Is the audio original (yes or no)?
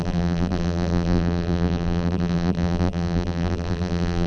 no